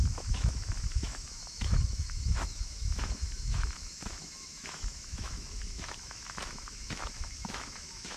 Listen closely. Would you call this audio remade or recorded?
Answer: remade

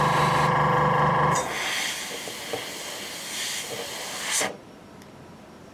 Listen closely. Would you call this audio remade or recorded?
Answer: recorded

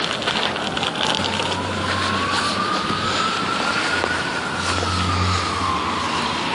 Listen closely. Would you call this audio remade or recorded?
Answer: recorded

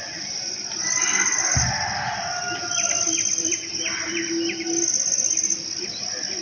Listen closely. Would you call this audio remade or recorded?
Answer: recorded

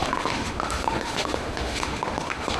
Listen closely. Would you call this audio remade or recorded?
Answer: remade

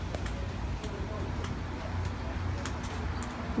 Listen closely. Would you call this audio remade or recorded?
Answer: recorded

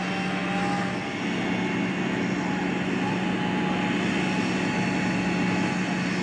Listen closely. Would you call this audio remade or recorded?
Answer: recorded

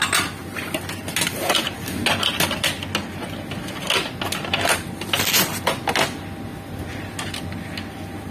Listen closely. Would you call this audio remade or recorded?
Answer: recorded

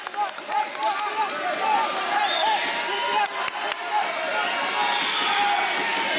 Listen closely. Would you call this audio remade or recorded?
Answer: recorded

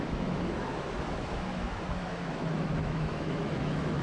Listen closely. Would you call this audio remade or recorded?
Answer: remade